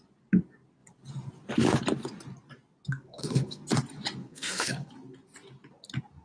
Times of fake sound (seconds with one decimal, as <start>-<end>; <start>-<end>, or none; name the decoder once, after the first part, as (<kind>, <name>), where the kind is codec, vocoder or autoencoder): 2.9-3.6 (codec, SNAC); 4.2-4.9